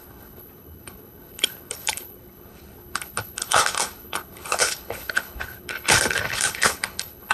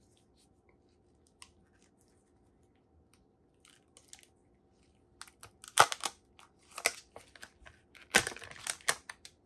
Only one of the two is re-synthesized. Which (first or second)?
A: first